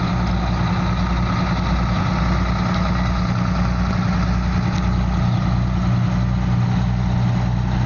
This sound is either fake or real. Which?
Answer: real